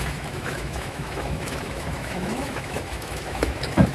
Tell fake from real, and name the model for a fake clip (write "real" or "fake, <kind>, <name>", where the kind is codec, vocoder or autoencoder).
fake, autoencoder, DAC-VAE